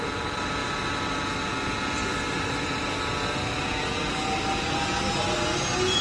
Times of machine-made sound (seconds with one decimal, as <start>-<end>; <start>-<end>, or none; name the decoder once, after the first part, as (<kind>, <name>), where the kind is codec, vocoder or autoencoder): none